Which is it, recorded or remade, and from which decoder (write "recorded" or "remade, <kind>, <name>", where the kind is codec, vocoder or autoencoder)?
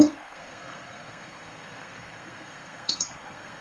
remade, codec, SNAC